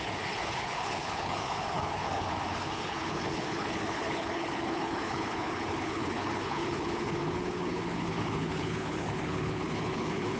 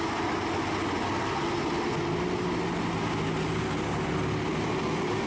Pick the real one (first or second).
second